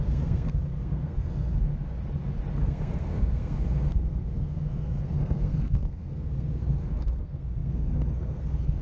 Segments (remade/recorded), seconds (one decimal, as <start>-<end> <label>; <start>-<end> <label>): 0.0-1.7 remade; 1.7-2.6 recorded; 2.6-8.8 remade